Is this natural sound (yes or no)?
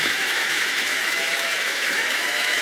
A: no